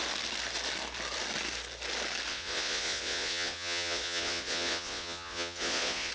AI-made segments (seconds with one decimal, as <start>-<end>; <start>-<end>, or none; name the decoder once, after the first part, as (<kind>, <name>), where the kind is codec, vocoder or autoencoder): 2.3-6.1 (vocoder, Vocos)